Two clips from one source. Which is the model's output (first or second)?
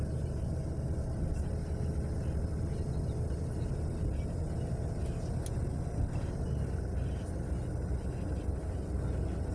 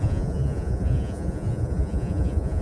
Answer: second